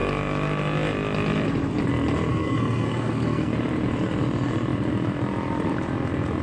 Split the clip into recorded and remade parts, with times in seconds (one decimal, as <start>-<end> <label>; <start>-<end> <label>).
0.0-2.3 recorded; 2.3-3.5 remade; 3.5-6.4 recorded